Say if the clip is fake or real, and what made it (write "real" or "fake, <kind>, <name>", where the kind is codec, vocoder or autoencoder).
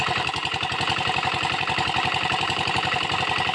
fake, vocoder, BigVGAN v2